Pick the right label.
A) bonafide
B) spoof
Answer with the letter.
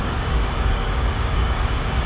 B